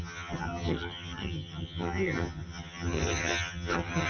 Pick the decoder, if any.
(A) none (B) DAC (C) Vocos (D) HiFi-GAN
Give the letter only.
D